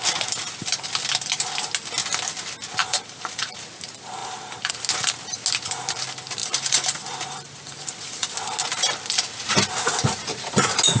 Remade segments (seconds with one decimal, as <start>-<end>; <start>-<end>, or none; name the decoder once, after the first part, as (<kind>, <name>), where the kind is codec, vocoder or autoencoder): 2.8-3.6 (vocoder, BigVGAN v2); 4.2-4.7; 6.4-8.3